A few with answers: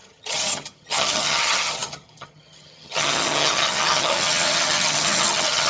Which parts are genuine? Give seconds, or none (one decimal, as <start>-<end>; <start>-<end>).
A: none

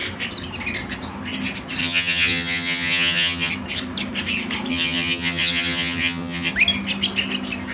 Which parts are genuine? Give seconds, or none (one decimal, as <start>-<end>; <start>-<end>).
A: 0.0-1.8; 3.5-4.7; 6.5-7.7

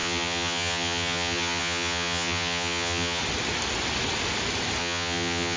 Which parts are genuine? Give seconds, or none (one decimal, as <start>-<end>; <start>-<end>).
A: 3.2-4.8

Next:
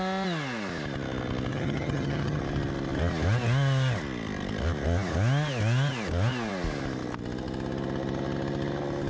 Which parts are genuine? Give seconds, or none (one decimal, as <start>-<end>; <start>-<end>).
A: 0.0-1.5; 2.4-9.1